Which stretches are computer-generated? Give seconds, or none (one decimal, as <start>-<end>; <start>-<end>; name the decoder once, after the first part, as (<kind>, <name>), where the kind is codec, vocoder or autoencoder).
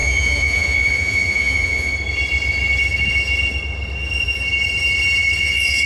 0.0-1.9 (vocoder, Vocos); 5.4-5.9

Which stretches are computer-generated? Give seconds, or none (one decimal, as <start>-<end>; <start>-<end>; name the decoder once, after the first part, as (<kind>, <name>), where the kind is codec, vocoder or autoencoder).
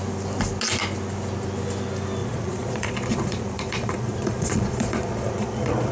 2.2-5.9 (vocoder, Vocos)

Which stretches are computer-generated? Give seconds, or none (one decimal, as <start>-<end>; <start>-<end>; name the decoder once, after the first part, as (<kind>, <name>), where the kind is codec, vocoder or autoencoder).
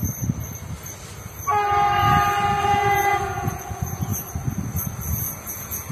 2.6-4.1 (vocoder, Vocos); 5.1-5.9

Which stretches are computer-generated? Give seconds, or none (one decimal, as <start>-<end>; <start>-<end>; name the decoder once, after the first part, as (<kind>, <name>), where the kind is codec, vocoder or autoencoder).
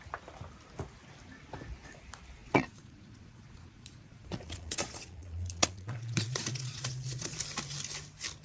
2.4-7.4 (vocoder, Vocos)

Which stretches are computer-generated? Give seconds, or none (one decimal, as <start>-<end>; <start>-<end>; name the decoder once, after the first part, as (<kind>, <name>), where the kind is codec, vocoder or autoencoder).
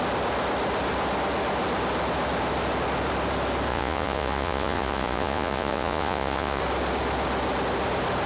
3.7-6.6 (vocoder, Vocos)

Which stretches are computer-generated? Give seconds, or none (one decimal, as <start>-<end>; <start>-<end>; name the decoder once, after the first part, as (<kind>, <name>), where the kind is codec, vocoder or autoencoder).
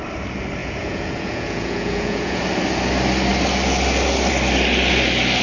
0.6-2.4 (vocoder, Vocos)